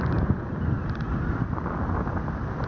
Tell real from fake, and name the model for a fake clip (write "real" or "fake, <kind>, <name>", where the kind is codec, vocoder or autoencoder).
real